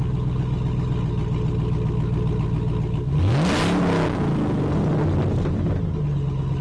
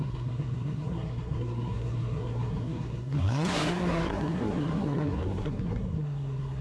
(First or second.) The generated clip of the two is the second